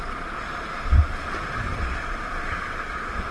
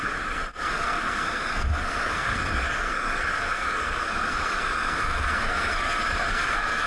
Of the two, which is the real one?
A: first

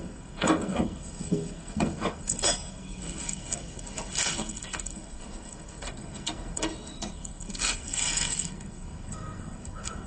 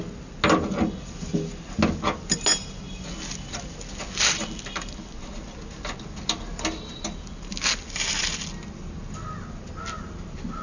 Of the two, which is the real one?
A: second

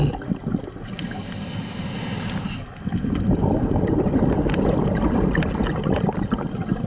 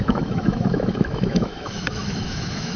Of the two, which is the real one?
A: first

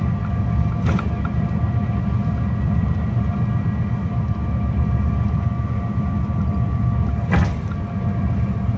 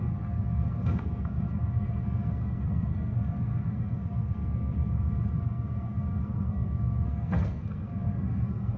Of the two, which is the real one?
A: first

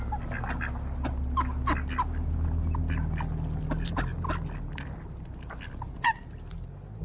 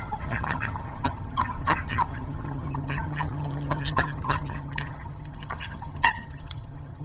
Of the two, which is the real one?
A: first